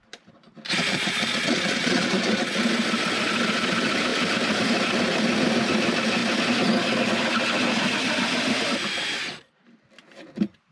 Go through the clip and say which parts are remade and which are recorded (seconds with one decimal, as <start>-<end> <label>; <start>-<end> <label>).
0.0-0.9 recorded; 0.9-2.6 remade; 2.6-10.7 recorded